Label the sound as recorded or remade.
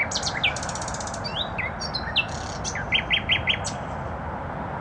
recorded